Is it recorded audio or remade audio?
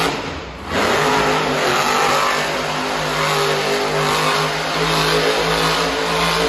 recorded